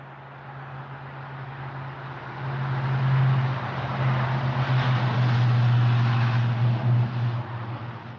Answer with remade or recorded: recorded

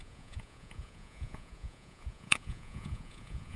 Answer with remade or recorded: remade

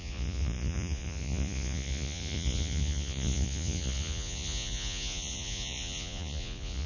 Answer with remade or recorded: remade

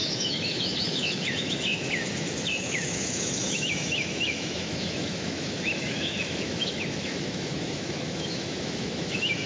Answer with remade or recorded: remade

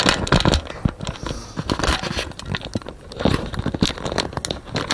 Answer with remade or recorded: recorded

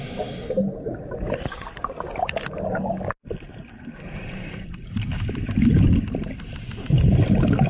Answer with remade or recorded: recorded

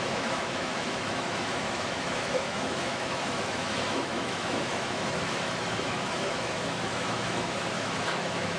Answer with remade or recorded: remade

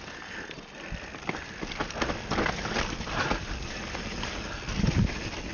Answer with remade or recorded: recorded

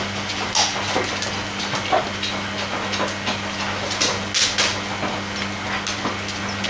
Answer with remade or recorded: recorded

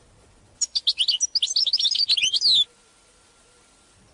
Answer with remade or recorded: recorded